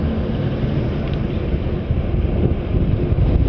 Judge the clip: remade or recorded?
recorded